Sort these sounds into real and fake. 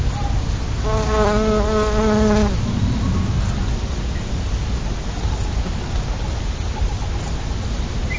real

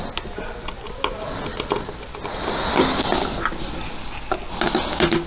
real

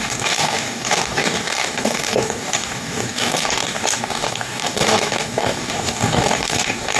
fake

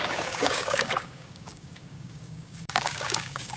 fake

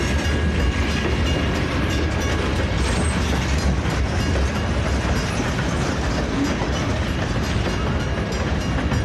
real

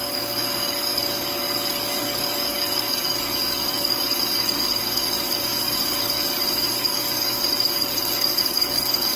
fake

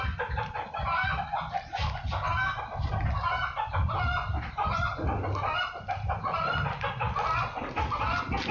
real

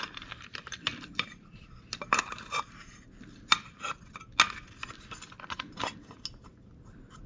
real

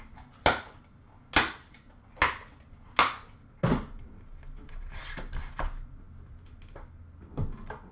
real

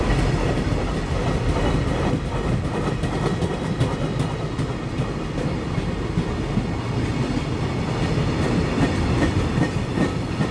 real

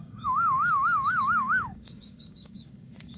fake